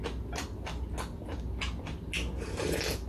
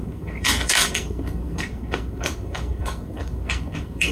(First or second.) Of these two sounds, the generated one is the second